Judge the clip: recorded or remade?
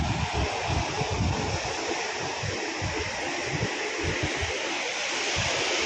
recorded